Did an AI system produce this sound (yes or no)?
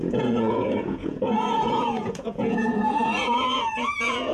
yes